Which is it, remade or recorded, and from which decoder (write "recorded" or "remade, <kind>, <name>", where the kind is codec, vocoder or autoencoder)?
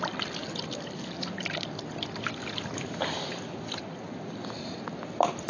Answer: recorded